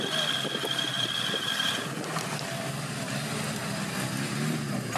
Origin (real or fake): real